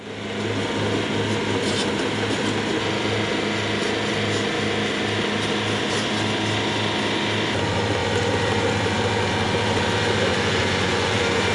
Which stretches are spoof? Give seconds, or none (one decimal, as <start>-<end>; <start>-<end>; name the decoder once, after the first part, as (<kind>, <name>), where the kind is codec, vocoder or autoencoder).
10.3-11.5 (vocoder, Vocos)